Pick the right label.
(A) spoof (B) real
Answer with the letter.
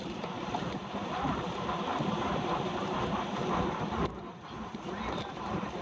A